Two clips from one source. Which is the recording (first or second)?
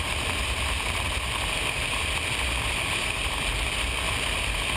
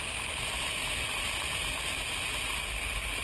second